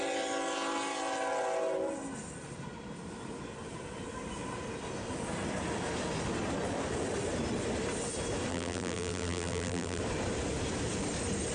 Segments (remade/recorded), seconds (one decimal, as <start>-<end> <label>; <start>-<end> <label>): 0.0-8.5 recorded; 8.5-10.0 remade; 10.0-11.5 recorded